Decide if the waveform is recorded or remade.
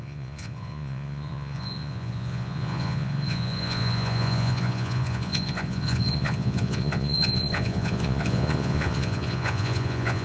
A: remade